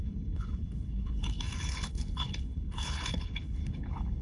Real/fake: fake